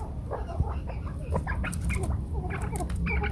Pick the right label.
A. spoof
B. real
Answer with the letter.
A